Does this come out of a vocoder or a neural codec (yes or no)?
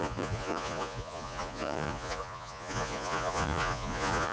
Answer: yes